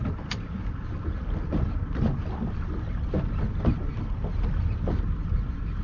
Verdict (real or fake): real